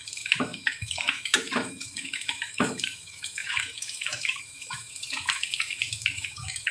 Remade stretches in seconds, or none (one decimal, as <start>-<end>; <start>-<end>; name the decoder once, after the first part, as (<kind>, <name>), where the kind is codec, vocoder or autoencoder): 0.0-6.7 (autoencoder, DAC-VAE)

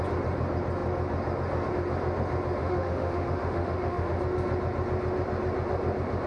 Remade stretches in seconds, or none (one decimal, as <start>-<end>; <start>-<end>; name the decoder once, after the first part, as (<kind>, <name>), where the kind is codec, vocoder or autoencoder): 2.6-4.2 (autoencoder, DAC-VAE)

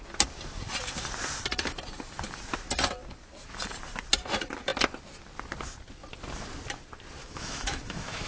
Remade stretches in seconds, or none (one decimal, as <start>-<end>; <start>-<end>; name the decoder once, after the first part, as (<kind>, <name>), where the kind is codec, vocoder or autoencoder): 7.2-8.3 (autoencoder, DAC-VAE)

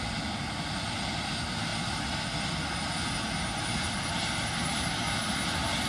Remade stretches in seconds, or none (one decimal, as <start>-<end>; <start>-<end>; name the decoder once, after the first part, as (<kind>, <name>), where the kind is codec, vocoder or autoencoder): none

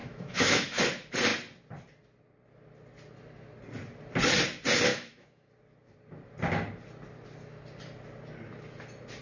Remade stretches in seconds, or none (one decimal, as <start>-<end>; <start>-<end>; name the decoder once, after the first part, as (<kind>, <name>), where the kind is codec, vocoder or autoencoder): 0.0-0.8 (autoencoder, DAC-VAE); 4.9-5.5

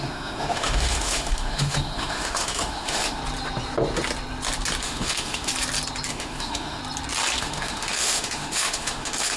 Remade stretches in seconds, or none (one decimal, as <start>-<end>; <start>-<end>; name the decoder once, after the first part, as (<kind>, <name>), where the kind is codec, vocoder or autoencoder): 0.0-3.2 (autoencoder, DAC-VAE); 4.8-5.5; 6.1-6.8; 7.4-9.4

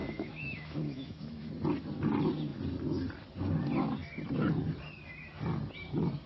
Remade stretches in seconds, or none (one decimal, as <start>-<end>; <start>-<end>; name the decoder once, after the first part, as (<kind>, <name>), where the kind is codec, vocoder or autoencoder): 0.0-1.5 (autoencoder, DAC-VAE)

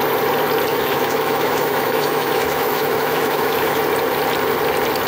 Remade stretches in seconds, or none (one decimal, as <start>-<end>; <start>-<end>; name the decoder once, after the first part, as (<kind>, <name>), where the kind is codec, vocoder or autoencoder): 0.7-3.8 (autoencoder, DAC-VAE)